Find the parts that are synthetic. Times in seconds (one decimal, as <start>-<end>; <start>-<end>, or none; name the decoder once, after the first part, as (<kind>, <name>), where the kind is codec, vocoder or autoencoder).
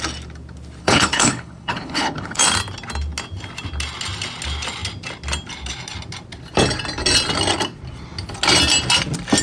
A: 0.8-2.4 (codec, HILCodec)